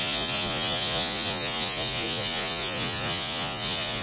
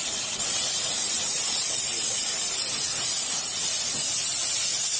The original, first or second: second